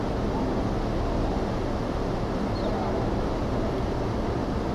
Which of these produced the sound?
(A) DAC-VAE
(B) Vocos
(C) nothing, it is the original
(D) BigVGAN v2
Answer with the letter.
C